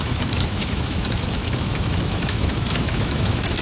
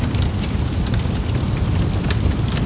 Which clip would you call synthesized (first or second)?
first